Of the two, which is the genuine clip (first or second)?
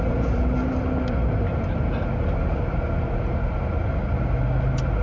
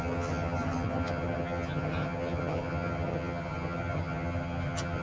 first